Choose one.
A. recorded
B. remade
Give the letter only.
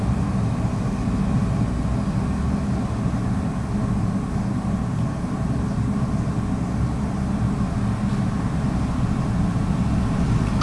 A